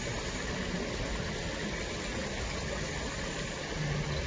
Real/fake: real